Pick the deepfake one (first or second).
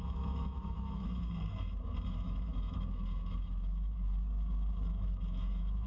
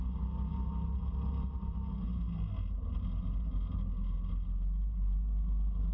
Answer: first